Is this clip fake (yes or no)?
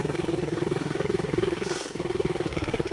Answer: yes